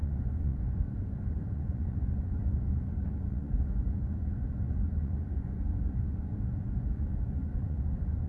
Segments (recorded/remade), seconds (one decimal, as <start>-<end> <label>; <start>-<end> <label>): 0.0-8.3 remade